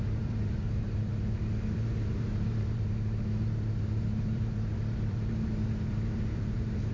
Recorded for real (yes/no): no